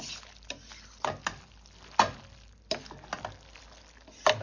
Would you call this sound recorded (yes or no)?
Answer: yes